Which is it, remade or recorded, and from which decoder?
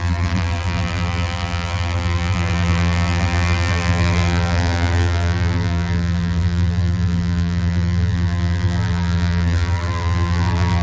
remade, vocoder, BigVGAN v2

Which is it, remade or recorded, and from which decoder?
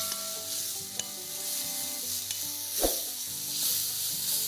recorded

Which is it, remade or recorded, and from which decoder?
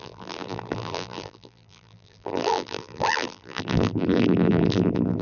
remade, vocoder, BigVGAN v2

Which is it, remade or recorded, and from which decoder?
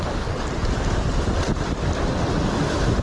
recorded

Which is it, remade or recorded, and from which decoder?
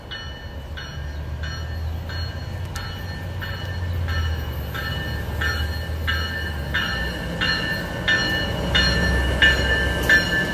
recorded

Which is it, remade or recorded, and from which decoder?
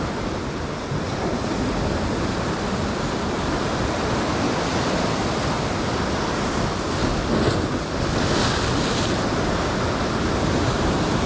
recorded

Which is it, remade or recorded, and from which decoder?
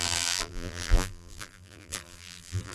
remade, vocoder, BigVGAN v2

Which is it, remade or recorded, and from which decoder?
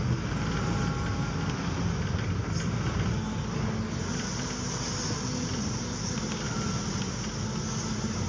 recorded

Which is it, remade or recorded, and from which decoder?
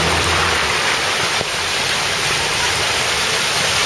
remade, vocoder, BigVGAN v2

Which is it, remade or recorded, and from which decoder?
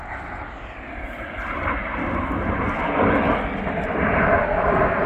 recorded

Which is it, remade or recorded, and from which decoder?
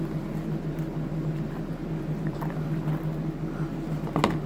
recorded